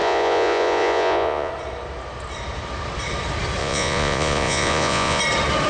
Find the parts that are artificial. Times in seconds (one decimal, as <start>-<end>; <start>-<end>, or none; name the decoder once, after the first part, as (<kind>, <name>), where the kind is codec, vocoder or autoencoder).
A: 0.0-1.5 (vocoder, Vocos); 3.6-5.2